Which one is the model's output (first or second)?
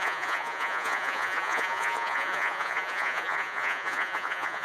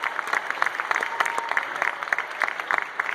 first